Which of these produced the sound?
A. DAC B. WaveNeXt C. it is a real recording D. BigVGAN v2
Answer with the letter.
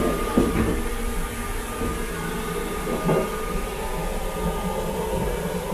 C